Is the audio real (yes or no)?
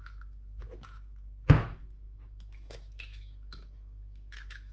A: no